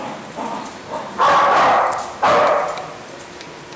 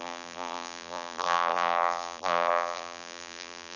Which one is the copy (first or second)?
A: second